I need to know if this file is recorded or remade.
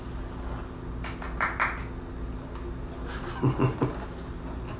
recorded